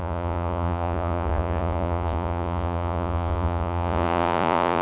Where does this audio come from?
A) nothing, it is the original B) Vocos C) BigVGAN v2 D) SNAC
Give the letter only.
B